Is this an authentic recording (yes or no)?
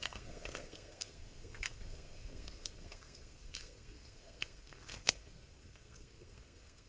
no